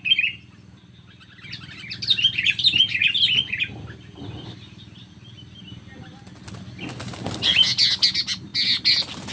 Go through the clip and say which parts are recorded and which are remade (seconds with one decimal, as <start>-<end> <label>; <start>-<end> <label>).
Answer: 0.0-9.3 recorded